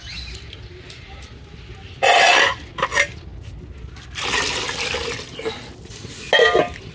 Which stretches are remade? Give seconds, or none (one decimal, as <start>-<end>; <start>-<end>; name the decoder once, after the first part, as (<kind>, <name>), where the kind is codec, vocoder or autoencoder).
none